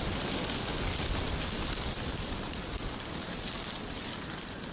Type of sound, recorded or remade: recorded